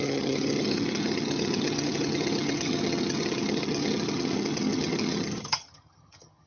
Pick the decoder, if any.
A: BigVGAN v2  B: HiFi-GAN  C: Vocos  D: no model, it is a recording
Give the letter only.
B